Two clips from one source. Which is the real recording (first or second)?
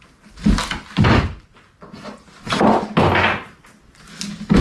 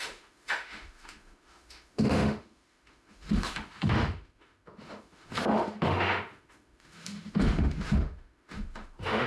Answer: first